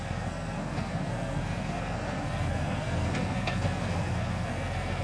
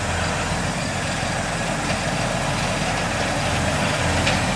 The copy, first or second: first